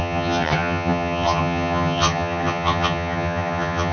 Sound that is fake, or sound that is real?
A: fake